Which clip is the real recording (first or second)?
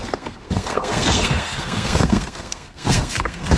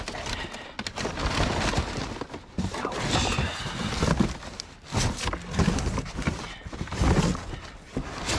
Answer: second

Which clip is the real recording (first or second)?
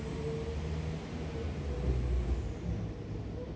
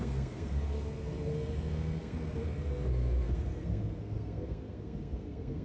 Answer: first